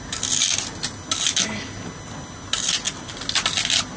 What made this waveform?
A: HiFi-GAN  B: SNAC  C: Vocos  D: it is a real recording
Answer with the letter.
D